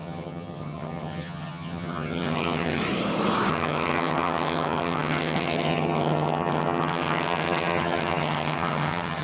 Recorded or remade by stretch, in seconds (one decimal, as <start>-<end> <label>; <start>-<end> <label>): 0.0-2.8 remade; 2.8-3.5 recorded; 3.5-9.2 remade